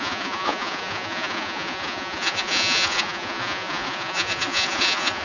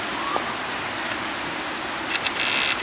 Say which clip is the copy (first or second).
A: first